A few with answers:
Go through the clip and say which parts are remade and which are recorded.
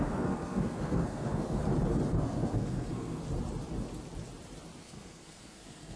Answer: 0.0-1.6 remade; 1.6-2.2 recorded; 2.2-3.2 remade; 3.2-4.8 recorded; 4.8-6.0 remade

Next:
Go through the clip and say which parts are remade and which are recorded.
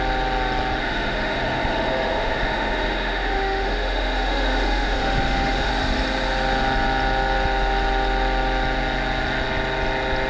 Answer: 0.0-0.8 recorded; 0.8-5.7 remade; 5.7-10.3 recorded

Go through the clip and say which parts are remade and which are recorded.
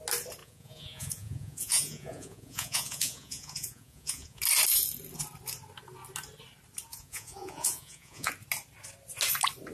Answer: 0.0-0.4 recorded; 0.4-4.4 remade; 4.4-6.9 recorded; 6.9-8.3 remade; 8.3-9.7 recorded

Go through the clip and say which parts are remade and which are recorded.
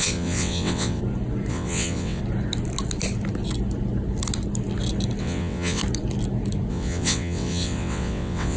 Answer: 0.0-1.0 remade; 1.0-1.5 recorded; 1.5-2.2 remade; 2.2-5.2 recorded; 5.2-5.8 remade; 5.8-6.7 recorded; 6.7-8.6 remade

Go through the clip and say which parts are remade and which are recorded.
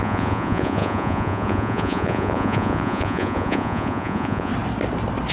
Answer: 0.0-4.5 remade; 4.5-5.3 recorded